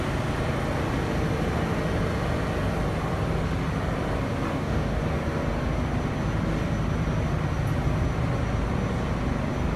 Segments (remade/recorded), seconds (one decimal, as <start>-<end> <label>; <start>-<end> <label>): 0.0-4.5 recorded; 4.5-5.0 remade; 5.0-9.8 recorded